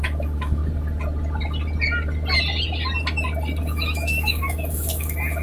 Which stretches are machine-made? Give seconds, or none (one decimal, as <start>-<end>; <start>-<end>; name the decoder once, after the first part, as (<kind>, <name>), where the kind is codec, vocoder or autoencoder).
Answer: 0.0-0.6 (autoencoder, DAC-VAE); 3.6-5.4

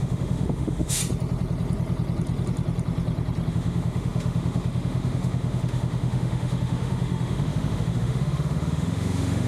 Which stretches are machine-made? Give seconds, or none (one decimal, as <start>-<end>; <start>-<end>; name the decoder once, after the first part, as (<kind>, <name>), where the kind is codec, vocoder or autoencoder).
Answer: 0.0-1.0 (autoencoder, DAC-VAE); 3.5-9.5